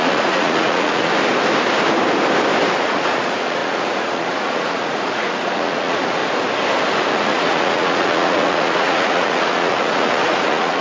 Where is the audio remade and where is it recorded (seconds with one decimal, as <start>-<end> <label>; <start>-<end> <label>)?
0.0-1.1 remade; 1.1-2.8 recorded; 2.8-6.2 remade; 6.2-7.1 recorded; 7.1-10.8 remade